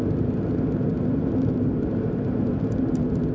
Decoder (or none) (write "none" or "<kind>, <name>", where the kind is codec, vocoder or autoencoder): none